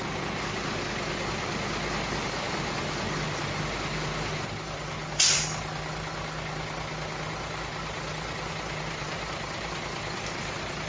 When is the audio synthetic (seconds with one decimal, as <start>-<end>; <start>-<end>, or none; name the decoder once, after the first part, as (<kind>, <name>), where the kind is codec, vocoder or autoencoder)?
none